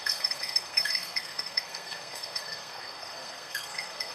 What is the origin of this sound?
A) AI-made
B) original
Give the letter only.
A